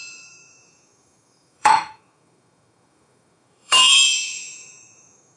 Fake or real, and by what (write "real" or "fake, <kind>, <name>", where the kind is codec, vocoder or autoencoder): fake, autoencoder, DAC-VAE